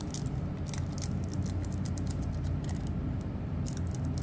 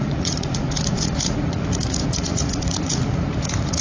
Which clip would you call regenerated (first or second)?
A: second